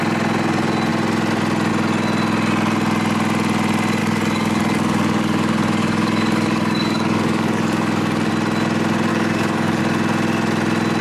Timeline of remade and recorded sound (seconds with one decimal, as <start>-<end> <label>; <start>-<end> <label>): 0.0-4.0 recorded; 4.0-8.3 remade; 8.3-9.1 recorded; 9.1-9.8 remade; 9.8-11.0 recorded